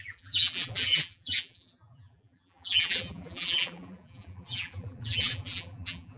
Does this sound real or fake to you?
fake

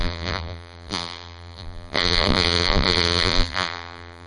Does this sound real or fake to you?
fake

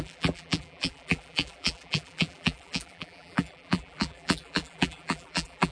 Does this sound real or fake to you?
fake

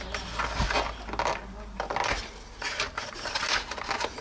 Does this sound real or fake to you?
real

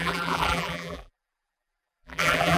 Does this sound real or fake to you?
fake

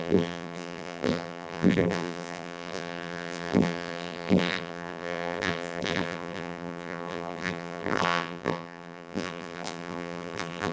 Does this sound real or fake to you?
fake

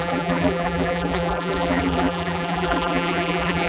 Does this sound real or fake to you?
fake